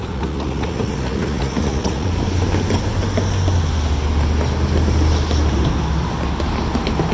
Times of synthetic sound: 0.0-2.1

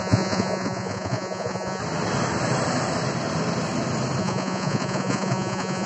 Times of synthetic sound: 0.0-1.8; 4.2-5.9